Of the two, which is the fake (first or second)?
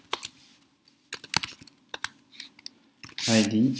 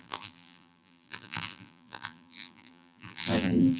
second